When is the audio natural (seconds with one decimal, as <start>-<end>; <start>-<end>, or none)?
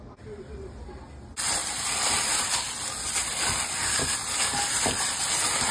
0.0-5.7